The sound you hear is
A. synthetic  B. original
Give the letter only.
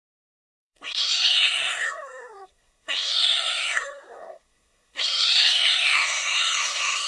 A